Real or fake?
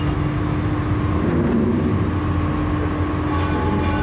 real